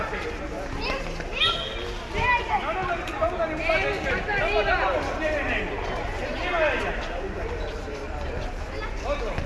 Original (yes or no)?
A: yes